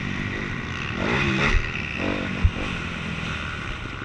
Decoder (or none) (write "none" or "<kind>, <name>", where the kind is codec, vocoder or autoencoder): none